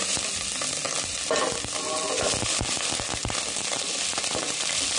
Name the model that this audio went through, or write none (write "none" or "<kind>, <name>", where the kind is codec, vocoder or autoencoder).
none